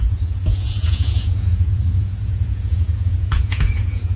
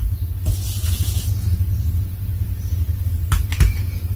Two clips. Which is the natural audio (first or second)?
second